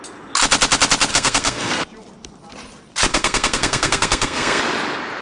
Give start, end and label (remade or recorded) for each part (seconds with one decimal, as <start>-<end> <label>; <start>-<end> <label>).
0.0-1.1 recorded; 1.1-1.8 remade; 1.8-3.1 recorded; 3.1-4.6 remade; 4.6-5.2 recorded